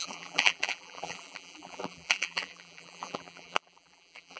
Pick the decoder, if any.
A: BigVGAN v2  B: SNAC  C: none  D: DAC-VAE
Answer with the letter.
A